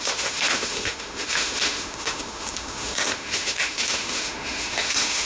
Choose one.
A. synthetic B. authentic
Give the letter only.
A